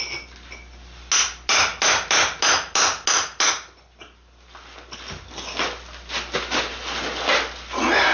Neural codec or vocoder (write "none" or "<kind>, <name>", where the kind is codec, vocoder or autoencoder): none